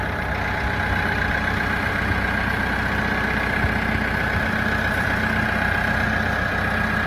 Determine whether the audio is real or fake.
real